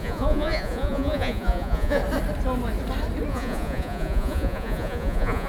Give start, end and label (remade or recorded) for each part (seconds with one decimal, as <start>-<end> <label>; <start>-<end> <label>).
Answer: 0.0-2.0 remade; 2.0-3.3 recorded; 3.3-5.5 remade